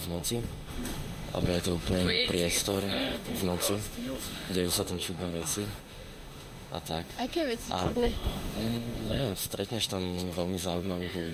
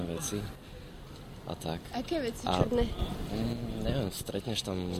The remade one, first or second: first